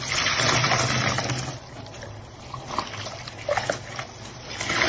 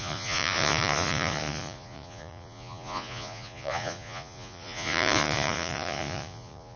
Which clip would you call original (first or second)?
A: first